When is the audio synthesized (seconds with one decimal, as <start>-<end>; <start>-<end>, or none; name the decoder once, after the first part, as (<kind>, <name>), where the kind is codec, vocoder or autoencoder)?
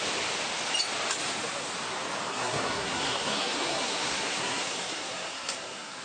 2.3-6.0 (codec, SNAC)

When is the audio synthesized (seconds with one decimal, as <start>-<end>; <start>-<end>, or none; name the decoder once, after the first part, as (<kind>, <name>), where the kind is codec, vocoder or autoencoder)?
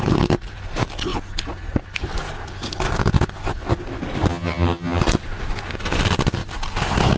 4.3-5.0 (vocoder, HiFi-GAN)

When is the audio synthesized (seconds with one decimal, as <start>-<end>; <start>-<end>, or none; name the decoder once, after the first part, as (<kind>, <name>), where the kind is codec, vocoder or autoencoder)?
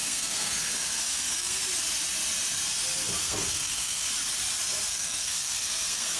0.0-1.6 (codec, SNAC); 3.2-4.1; 4.9-6.2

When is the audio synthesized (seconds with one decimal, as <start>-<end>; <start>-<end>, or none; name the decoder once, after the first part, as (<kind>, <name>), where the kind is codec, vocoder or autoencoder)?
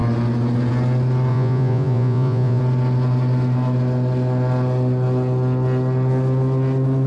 1.3-2.6 (vocoder, Vocos)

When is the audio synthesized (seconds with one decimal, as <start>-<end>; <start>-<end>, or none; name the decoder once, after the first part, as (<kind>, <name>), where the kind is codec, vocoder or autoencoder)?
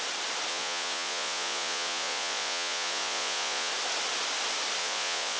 0.5-3.7 (vocoder, Vocos); 4.8-5.4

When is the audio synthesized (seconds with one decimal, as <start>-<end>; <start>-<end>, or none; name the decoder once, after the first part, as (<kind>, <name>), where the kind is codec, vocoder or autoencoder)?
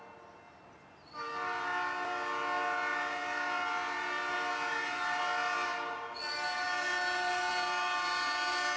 none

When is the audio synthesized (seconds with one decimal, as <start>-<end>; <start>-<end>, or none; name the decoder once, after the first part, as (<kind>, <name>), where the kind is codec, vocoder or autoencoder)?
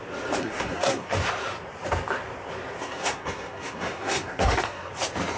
0.4-1.1 (codec, SNAC); 2.8-4.9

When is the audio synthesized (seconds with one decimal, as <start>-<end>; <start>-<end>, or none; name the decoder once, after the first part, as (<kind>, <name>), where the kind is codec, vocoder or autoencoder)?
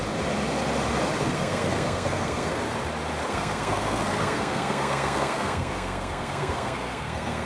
1.2-2.6 (codec, SNAC); 3.3-7.5